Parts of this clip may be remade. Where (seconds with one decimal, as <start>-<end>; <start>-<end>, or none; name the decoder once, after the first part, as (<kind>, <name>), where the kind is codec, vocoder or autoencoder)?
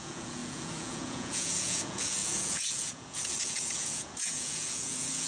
0.0-5.3 (vocoder, Vocos)